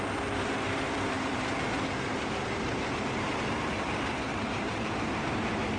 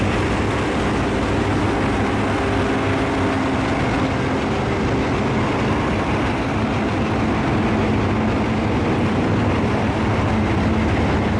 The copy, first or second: first